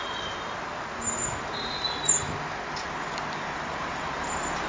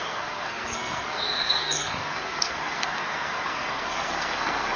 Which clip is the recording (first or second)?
first